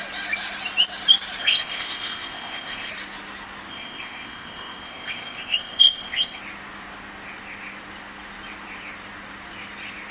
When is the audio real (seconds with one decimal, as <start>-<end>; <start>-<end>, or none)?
0.0-1.4; 2.9-3.7; 6.4-10.1